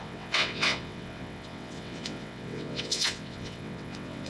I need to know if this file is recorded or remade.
remade